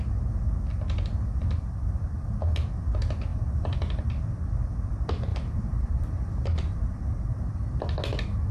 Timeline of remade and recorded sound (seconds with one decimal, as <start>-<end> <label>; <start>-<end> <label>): 0.0-1.4 recorded; 1.4-2.3 remade; 2.3-3.3 recorded; 3.3-4.1 remade; 4.1-5.3 recorded; 5.3-7.5 remade; 7.5-8.5 recorded